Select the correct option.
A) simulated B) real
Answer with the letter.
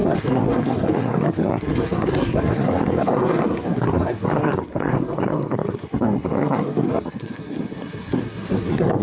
A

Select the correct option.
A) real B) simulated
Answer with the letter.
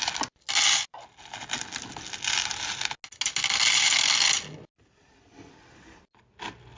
A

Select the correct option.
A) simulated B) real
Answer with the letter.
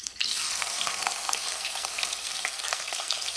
A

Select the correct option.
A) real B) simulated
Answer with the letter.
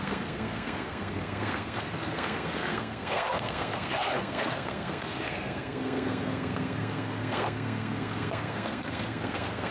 B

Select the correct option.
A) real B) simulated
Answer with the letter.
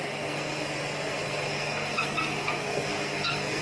B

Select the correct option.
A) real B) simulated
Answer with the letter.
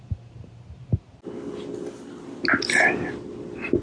A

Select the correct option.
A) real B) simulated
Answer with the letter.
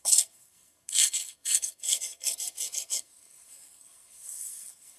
B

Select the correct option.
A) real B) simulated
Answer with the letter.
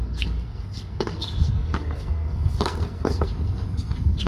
B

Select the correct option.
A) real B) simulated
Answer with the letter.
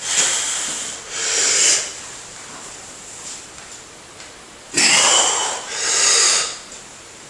A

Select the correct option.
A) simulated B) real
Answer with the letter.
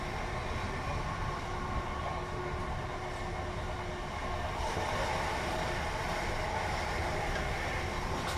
B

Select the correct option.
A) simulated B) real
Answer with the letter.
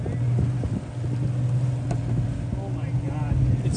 B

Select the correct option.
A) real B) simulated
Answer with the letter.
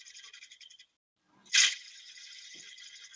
A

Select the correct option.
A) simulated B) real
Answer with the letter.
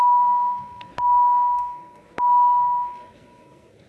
A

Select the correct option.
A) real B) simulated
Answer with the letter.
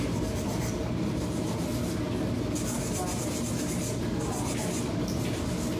A